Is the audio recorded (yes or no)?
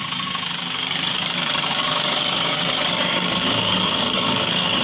no